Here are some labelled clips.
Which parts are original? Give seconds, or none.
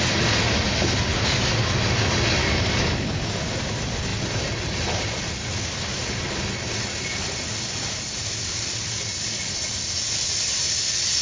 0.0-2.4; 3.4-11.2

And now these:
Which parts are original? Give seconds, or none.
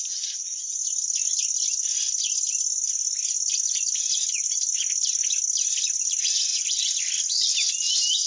0.0-8.3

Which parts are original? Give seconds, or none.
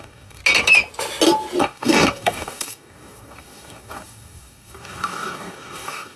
0.4-1.6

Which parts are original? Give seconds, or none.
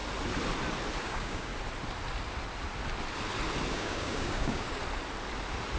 0.0-1.0; 1.5-3.7; 4.8-5.8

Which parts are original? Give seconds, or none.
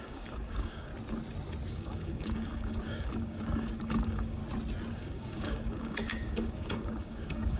0.9-1.7; 4.4-4.9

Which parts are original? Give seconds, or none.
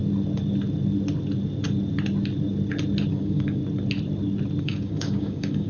0.0-3.1; 3.6-4.6